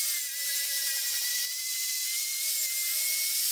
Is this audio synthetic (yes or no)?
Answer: no